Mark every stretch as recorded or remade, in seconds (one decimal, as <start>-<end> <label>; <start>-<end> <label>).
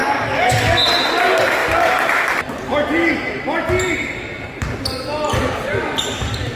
0.0-6.6 recorded